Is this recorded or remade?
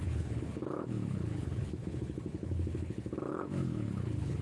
remade